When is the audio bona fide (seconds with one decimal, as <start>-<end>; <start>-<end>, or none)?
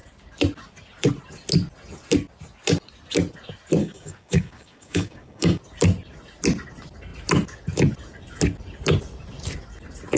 0.0-3.8; 5.6-10.2